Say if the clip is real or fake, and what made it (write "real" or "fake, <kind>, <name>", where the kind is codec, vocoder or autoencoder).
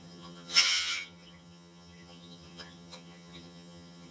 fake, vocoder, HiFi-GAN